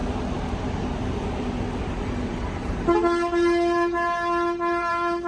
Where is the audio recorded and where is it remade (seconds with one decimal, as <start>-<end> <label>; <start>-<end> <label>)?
0.0-2.0 recorded; 2.0-5.3 remade